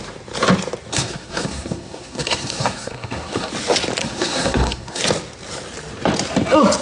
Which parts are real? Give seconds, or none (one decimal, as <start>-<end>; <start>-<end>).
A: 0.0-0.9; 3.5-4.0; 5.0-6.8